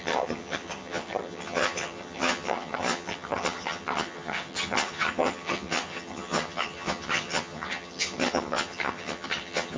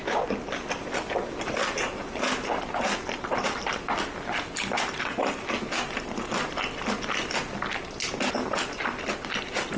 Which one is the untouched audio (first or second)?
second